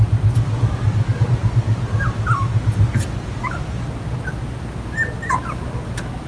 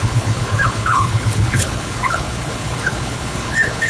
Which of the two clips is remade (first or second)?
second